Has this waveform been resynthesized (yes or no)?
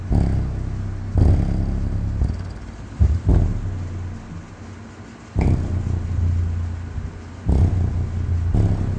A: no